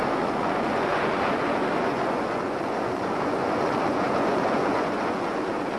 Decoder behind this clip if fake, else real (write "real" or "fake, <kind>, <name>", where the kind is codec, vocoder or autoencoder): fake, vocoder, Vocos